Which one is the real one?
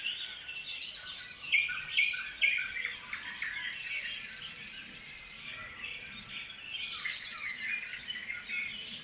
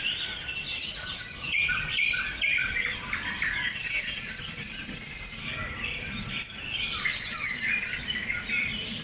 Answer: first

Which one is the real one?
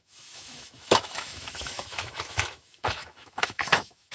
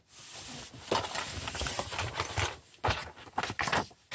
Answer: second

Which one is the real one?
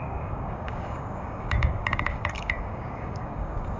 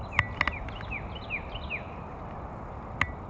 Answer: second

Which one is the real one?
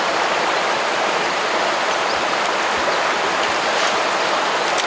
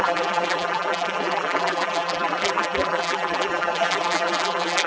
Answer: first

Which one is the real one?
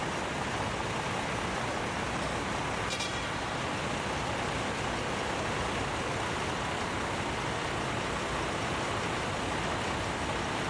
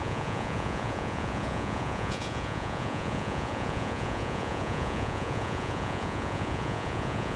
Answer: first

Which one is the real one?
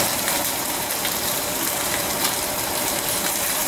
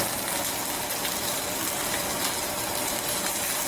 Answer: second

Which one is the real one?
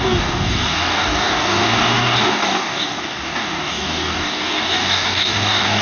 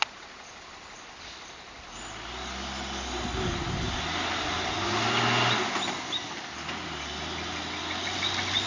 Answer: second